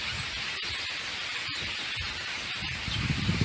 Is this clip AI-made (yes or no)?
no